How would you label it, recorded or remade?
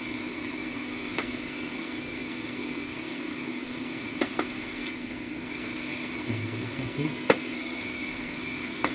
remade